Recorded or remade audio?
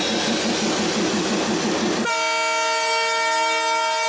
recorded